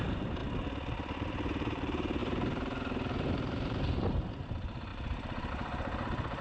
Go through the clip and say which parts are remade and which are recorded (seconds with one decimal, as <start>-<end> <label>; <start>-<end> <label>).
0.0-0.4 remade; 0.4-1.3 recorded; 1.3-6.4 remade